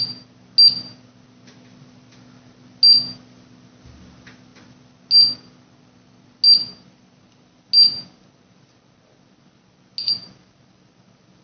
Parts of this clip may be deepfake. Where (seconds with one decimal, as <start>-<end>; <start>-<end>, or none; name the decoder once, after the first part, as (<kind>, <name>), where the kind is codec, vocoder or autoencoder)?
none